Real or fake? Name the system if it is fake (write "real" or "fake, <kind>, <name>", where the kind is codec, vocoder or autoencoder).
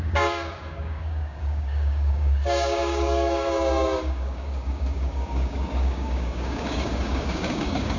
fake, codec, DAC